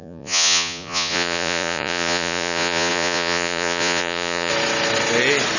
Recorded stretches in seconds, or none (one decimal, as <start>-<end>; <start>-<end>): 4.5-5.6